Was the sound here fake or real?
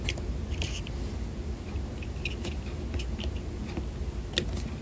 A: real